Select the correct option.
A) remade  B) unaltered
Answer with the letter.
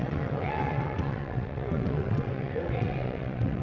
A